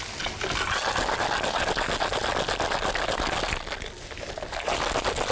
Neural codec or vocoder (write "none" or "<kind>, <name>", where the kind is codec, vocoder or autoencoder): none